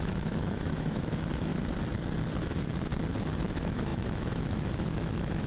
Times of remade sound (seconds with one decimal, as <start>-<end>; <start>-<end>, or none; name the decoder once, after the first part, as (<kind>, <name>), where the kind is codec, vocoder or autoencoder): 0.0-1.5 (autoencoder, DAC-VAE); 2.4-2.9; 3.4-5.5